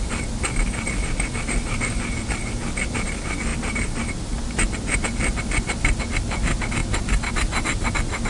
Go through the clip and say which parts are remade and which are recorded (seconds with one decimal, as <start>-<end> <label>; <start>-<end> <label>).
0.0-3.5 recorded; 3.5-4.4 remade; 4.4-6.8 recorded; 6.8-8.3 remade